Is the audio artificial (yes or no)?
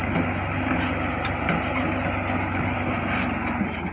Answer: no